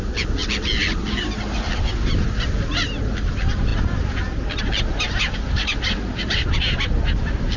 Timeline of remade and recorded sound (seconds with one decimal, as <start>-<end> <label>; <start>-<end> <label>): 0.0-7.6 recorded